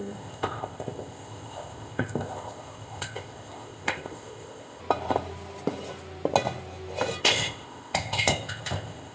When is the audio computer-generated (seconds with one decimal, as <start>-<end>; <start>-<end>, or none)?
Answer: 0.0-4.8; 7.2-9.1